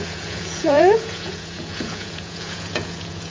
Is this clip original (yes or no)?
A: no